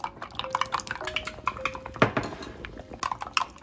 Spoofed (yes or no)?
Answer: no